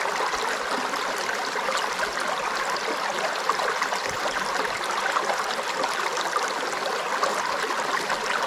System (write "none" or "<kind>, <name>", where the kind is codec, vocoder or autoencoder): none